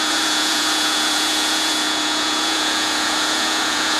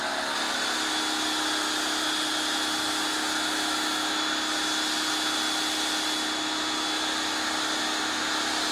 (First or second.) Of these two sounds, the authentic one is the second